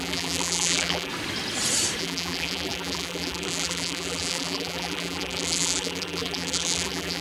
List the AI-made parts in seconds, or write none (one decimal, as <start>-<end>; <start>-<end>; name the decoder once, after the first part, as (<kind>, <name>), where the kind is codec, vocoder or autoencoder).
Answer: 0.0-1.1 (vocoder, BigVGAN v2); 2.0-7.2